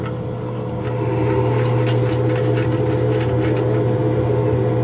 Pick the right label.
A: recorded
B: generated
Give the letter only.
A